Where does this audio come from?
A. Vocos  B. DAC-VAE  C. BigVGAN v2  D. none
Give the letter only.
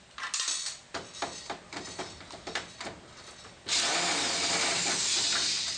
D